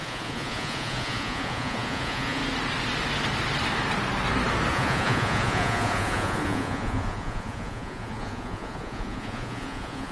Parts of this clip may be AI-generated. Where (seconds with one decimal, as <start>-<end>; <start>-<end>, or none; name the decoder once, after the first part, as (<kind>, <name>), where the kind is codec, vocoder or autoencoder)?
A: 0.0-2.4 (vocoder, Vocos); 4.7-10.1